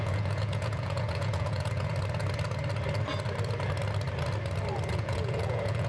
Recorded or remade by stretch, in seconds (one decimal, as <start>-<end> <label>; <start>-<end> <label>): 0.0-1.9 remade; 1.9-4.9 recorded; 4.9-5.9 remade